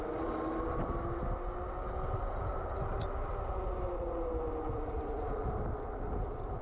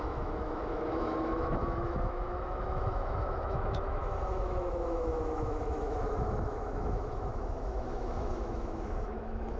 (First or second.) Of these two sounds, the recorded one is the first